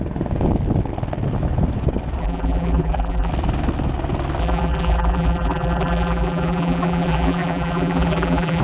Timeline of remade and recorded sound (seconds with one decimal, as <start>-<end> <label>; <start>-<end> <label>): 0.0-2.2 recorded; 2.2-3.3 remade; 3.3-4.4 recorded; 4.4-8.6 remade